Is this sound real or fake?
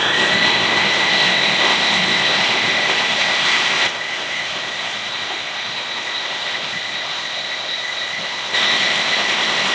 fake